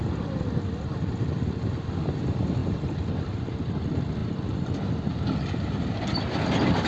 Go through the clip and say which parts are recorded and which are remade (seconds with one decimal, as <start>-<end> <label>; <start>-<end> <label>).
0.0-2.6 recorded; 2.6-3.5 remade; 3.5-6.9 recorded